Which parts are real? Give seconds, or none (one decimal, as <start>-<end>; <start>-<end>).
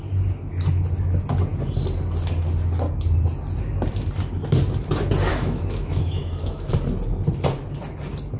0.0-5.3; 6.7-8.4